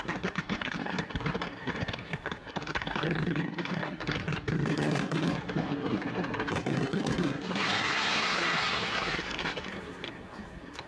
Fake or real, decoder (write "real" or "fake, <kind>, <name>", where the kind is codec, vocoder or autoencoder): fake, codec, SNAC